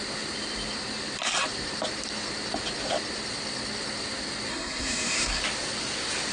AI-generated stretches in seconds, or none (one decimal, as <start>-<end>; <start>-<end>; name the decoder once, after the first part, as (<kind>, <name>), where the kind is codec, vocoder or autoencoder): 4.5-5.4 (codec, SNAC)